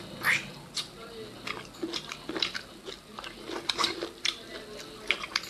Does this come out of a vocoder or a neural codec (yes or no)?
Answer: no